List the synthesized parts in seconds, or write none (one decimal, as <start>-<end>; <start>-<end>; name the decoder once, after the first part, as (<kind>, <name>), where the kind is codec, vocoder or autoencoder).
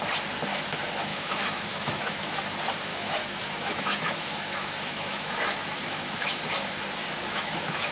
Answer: 1.1-2.4 (autoencoder, DAC-VAE); 2.9-6.4; 7.0-7.9